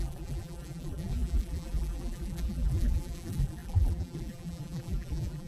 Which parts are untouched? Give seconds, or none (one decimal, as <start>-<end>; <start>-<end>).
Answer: none